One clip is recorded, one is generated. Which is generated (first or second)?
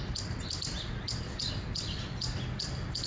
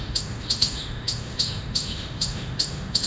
second